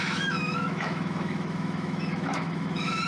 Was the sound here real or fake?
fake